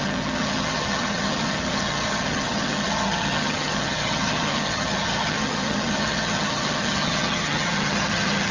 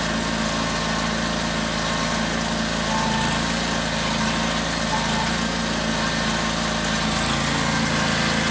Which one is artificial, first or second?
first